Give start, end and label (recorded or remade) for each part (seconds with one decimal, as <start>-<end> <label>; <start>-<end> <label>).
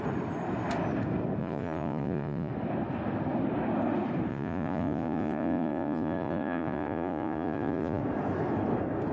0.0-1.4 recorded; 1.4-2.5 remade; 2.5-4.3 recorded; 4.3-8.0 remade; 8.0-9.1 recorded